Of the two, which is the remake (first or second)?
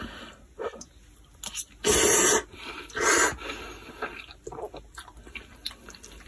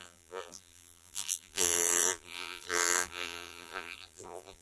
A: second